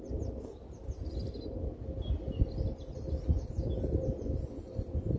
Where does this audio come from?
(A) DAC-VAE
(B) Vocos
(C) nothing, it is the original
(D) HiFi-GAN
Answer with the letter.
C